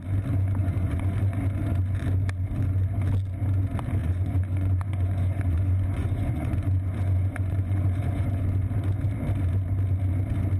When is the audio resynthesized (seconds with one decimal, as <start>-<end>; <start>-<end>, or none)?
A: 0.6-1.3; 4.0-8.4